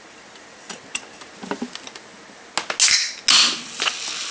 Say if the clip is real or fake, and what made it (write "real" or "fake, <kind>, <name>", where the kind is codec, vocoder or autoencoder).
real